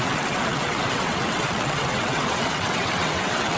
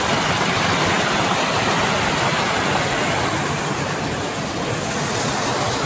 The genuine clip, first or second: second